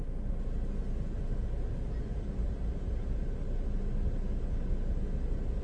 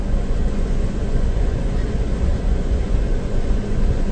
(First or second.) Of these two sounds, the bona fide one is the first